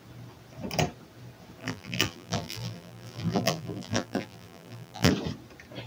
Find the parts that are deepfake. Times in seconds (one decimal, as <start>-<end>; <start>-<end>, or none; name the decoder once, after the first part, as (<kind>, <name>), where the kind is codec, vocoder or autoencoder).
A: 1.6-5.1 (vocoder, BigVGAN v2)